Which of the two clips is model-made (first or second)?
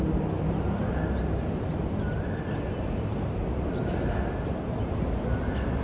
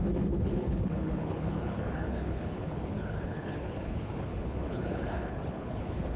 second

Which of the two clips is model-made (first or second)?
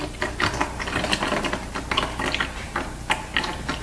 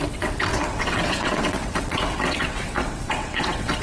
second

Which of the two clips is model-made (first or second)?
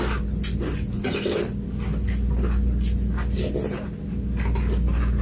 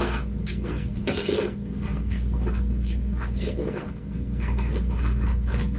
second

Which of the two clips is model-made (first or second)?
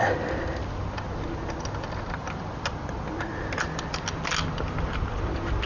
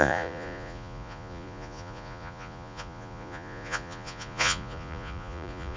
second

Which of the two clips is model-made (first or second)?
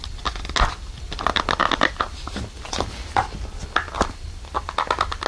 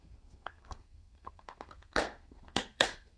second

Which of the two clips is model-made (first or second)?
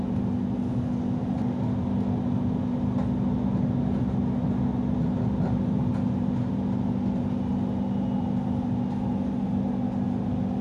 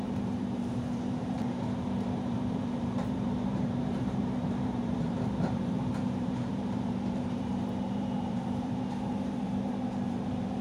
second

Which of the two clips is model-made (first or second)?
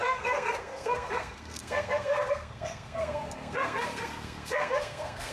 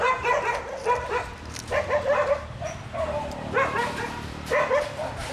first